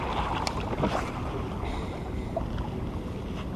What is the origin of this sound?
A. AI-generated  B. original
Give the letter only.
B